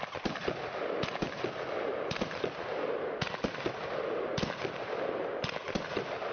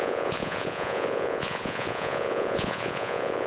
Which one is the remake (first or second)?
second